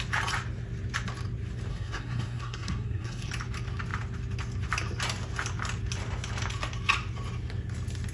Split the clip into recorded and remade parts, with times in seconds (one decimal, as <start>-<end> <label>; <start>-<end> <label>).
0.0-1.7 recorded; 1.7-3.3 remade; 3.3-8.1 recorded